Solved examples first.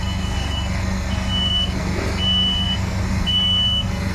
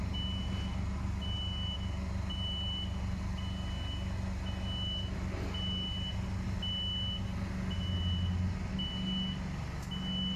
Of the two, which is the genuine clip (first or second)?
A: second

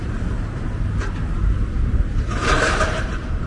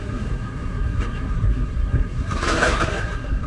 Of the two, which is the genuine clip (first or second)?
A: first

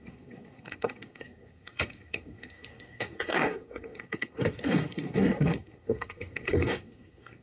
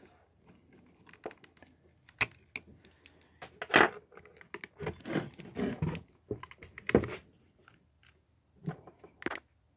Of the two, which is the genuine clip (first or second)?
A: second